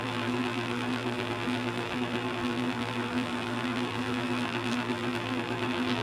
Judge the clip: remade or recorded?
remade